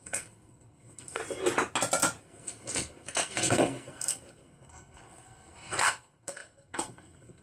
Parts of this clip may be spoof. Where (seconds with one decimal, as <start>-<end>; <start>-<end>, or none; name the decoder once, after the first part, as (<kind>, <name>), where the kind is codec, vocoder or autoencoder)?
0.0-1.2 (codec, SNAC); 2.2-7.4